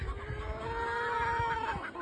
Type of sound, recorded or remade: recorded